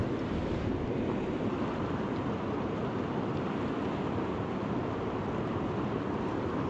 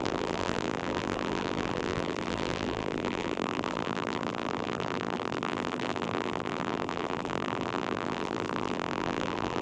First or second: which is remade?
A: second